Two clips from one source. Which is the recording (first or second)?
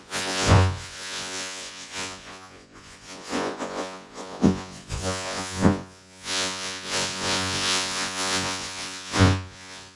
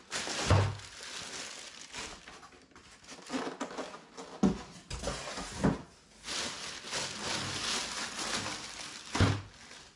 second